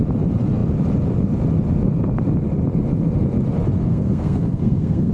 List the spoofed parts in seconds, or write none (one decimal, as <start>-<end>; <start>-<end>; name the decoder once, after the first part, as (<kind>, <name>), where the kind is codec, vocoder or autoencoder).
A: 3.9-5.1 (codec, SNAC)